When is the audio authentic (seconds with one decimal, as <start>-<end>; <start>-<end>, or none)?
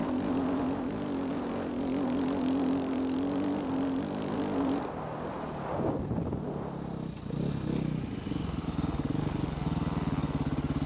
0.0-10.9